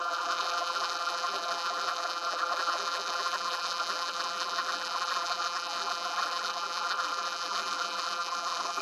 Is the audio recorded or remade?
remade